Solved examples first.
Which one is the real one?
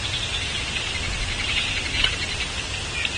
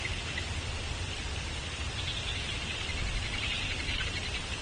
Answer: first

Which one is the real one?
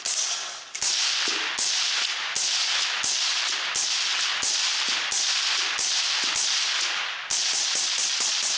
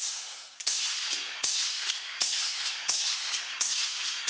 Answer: first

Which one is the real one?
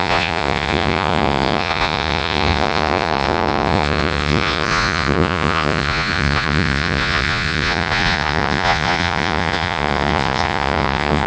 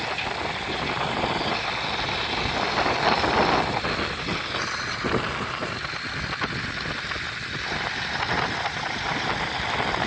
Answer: second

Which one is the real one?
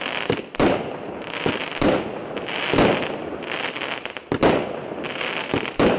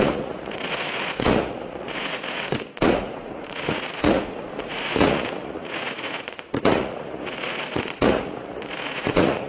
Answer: first